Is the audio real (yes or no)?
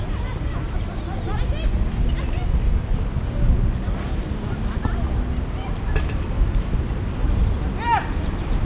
yes